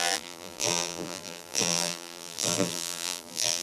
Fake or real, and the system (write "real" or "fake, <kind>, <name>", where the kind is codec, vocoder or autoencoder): fake, vocoder, BigVGAN v2